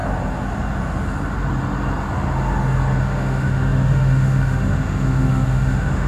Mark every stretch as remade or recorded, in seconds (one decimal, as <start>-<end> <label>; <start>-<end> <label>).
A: 0.0-3.0 recorded; 3.0-6.1 remade